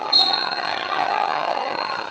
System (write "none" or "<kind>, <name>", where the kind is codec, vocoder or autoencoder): vocoder, HiFi-GAN